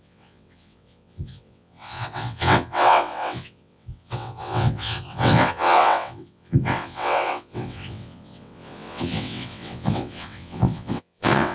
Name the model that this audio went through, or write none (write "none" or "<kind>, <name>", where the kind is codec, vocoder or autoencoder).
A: vocoder, WaveNeXt